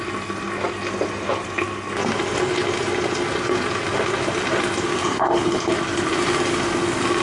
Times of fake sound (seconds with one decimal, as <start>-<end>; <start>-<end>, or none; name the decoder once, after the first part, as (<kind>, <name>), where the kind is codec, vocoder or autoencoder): 5.0-5.7 (codec, HILCodec)